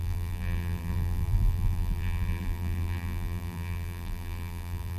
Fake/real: fake